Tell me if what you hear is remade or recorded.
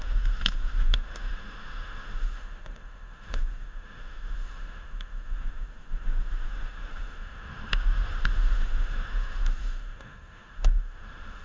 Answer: remade